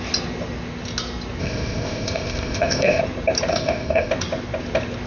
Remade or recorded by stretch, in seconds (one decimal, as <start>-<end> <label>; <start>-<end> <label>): 0.0-1.4 recorded; 1.4-3.0 remade; 3.0-3.5 recorded; 3.5-4.1 remade; 4.1-5.1 recorded